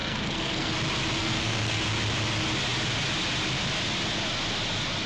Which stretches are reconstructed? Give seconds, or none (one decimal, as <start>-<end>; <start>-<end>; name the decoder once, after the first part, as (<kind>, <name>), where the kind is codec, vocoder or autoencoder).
0.0-0.7 (codec, SNAC); 1.2-1.8